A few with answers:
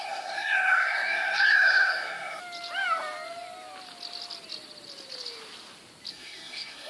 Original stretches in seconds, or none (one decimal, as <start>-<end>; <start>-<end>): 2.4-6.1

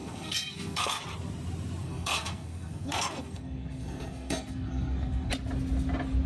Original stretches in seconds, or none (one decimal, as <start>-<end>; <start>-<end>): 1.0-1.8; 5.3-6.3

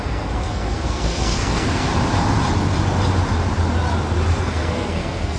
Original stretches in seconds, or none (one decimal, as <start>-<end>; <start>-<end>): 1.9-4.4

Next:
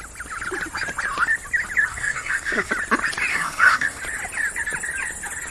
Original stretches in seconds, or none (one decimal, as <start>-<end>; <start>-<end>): 0.0-1.9; 2.7-3.3; 4.0-5.5

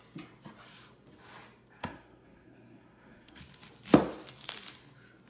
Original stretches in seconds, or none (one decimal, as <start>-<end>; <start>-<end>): 0.0-1.8; 3.4-5.3

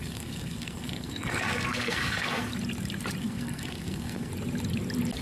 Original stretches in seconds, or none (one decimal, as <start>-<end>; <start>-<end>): 2.5-3.2; 4.3-5.2

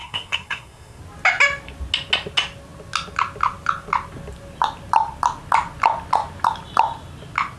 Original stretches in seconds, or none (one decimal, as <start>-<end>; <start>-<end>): 1.0-7.6

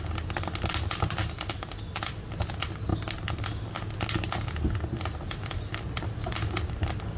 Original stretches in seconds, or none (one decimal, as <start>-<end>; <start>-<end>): 0.0-7.2